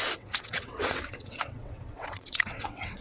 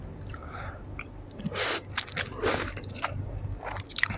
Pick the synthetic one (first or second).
first